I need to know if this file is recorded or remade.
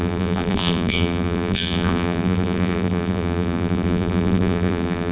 remade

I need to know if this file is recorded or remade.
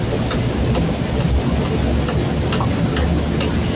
recorded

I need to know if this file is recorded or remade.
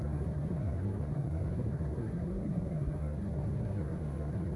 remade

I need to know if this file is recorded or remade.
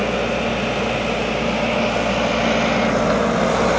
recorded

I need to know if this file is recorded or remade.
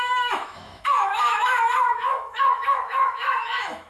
remade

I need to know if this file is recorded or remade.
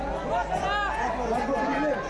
recorded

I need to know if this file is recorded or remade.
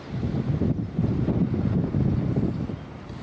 recorded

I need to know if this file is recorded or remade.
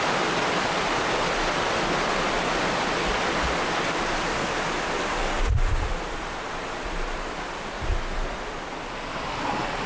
recorded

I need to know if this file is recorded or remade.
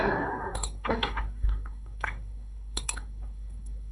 remade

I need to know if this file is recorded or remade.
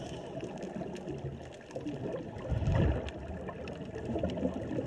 recorded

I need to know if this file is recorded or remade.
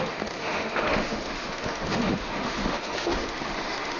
remade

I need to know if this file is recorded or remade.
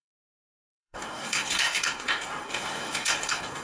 remade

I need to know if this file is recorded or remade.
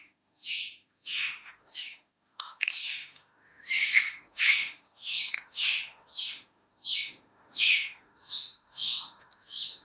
remade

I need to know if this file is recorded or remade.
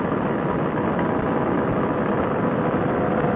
recorded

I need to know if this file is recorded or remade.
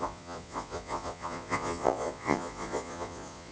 remade